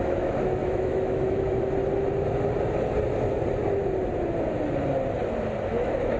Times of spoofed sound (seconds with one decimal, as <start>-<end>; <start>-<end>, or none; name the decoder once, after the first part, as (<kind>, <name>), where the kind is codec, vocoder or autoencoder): 0.0-1.7 (autoencoder, DAC-VAE); 5.7-6.2